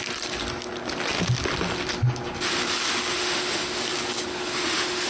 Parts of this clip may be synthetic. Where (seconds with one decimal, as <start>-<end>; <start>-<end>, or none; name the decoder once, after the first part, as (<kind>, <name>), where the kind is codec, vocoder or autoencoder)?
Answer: 3.1-3.8 (autoencoder, DAC-VAE); 4.3-5.1